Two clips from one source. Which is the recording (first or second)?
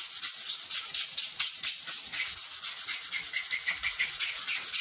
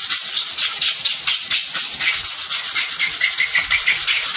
second